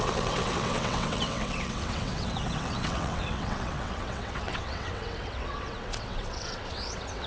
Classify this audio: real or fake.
fake